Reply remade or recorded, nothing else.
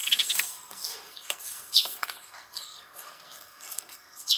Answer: remade